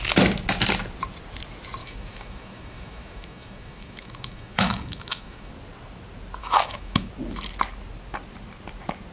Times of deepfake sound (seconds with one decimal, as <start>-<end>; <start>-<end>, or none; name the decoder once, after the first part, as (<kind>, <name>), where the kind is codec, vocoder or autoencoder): 1.8-5.5 (autoencoder, DAC-VAE); 6.4-7.1